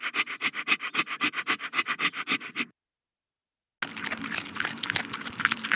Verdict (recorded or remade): recorded